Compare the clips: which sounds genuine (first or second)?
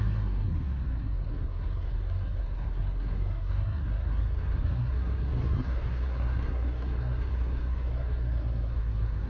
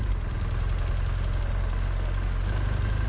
second